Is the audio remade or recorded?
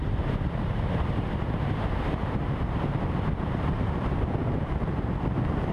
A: remade